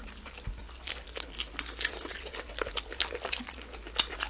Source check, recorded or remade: recorded